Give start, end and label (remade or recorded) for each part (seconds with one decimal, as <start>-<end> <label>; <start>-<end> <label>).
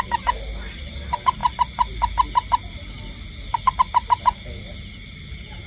0.0-5.7 recorded